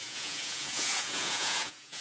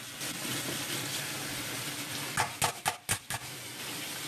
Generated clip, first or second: first